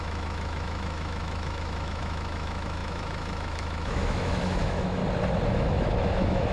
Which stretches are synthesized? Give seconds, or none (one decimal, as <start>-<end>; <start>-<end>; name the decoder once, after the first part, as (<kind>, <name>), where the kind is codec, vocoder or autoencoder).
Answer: 0.0-5.0 (autoencoder, DAC-VAE); 5.5-6.5